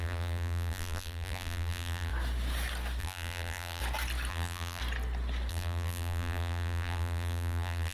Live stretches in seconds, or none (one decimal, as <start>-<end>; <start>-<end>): 2.1-3.0; 3.8-4.3; 4.8-5.5